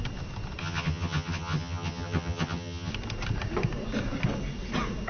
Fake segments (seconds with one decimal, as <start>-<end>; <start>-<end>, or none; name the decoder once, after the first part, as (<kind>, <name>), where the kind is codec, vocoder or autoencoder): 0.6-2.9 (vocoder, HiFi-GAN)